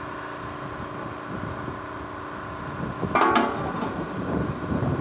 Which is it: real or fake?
real